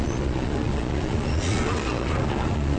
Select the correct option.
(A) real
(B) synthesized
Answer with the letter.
B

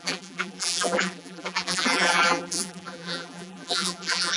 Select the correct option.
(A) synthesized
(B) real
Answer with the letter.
A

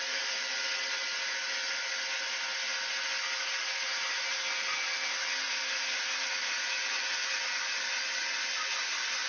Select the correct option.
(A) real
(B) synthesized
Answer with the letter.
A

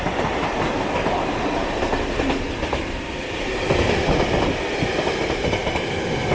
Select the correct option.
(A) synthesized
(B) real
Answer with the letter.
A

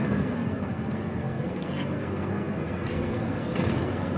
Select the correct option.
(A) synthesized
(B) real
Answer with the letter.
A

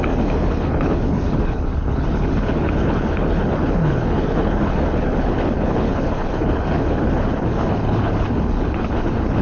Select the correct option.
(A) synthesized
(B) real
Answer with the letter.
A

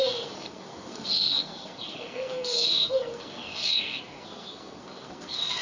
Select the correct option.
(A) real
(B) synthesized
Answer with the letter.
B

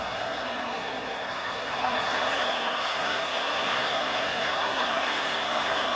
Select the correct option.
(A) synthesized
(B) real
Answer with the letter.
A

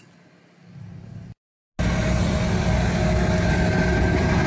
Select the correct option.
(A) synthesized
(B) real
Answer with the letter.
B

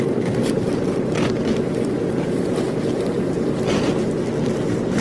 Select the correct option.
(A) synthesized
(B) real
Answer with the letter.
B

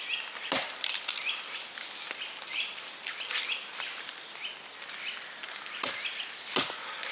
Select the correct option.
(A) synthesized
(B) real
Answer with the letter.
B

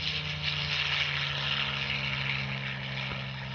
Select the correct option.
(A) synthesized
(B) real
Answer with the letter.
B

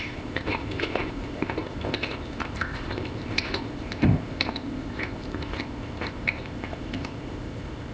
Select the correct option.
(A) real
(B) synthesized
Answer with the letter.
B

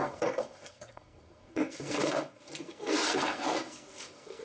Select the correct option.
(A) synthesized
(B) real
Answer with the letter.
A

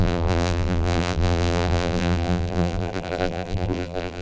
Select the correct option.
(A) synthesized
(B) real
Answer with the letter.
A